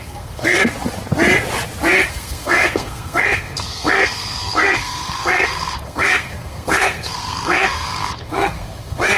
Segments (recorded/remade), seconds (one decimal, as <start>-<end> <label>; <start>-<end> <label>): 0.0-0.6 remade; 0.6-2.1 recorded; 2.1-9.2 remade